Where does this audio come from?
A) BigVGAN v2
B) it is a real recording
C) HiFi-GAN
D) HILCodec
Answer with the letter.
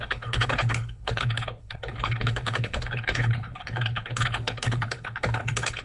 D